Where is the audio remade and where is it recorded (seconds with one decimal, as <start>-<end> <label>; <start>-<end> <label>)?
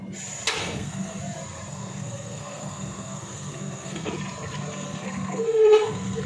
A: 0.0-0.6 recorded; 0.6-1.2 remade; 1.2-1.7 recorded; 1.7-4.1 remade; 4.1-4.7 recorded; 4.7-6.3 remade